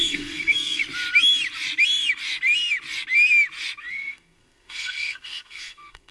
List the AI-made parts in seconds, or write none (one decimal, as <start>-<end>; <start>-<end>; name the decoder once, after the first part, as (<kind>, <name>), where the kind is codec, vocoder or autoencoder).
0.0-0.8 (codec, SNAC); 3.9-6.1

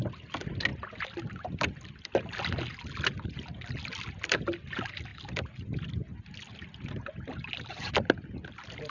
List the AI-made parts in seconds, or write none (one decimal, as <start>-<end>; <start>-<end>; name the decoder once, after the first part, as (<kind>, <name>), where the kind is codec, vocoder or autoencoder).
none